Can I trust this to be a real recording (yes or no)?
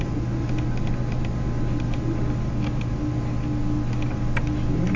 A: yes